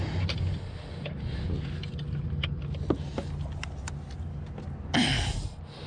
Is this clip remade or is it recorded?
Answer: recorded